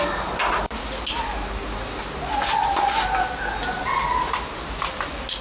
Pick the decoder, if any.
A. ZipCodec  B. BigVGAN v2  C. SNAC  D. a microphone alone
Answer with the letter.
D